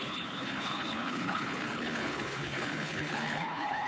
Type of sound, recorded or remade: remade